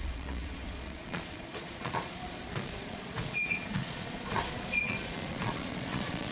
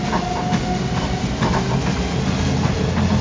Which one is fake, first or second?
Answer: first